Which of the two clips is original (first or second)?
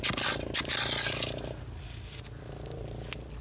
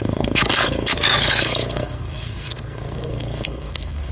first